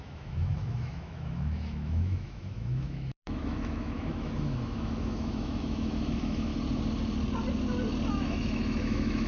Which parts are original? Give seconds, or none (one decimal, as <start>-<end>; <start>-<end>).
6.5-8.1

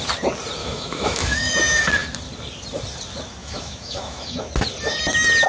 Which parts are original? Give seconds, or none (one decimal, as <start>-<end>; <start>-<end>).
0.0-0.6; 1.6-3.4; 4.5-5.5

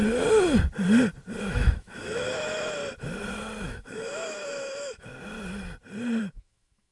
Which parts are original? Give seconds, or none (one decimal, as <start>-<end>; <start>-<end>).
0.0-1.4; 2.8-3.6; 5.1-6.2

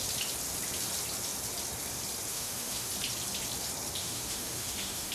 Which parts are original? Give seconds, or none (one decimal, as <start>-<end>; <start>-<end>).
0.0-2.3; 2.9-4.0

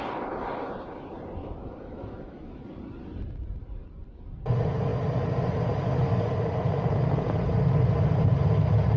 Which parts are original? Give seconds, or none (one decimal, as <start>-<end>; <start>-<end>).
0.0-1.4; 2.6-9.0

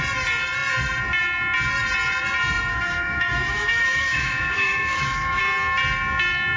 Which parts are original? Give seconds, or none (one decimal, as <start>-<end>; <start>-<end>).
0.0-2.7; 5.4-6.6

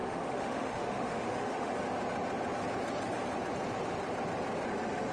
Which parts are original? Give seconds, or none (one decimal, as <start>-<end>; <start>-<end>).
1.8-5.1

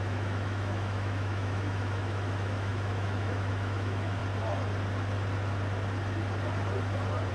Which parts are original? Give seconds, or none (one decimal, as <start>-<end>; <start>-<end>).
4.2-7.3